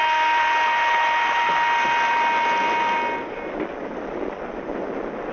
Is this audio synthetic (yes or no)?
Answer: no